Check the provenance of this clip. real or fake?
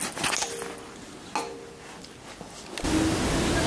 real